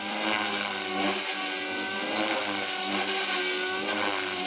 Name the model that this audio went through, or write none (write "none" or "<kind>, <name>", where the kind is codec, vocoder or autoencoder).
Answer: none